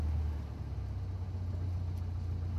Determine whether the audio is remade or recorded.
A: recorded